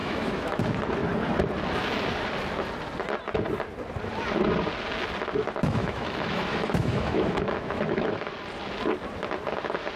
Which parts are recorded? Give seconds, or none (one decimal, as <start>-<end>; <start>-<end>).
0.6-5.6; 8.3-10.0